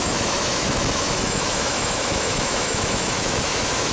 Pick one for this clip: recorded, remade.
remade